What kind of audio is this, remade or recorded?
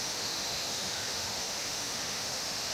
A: remade